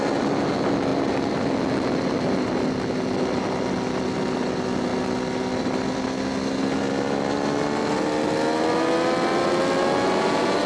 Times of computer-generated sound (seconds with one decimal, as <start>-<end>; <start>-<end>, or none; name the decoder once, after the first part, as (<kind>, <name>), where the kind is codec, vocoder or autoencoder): none